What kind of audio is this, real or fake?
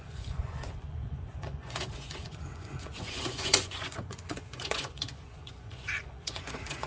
fake